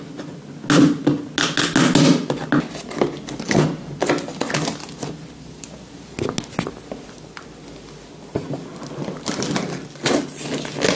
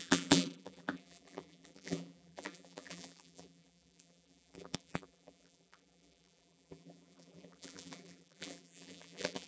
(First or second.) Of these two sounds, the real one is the first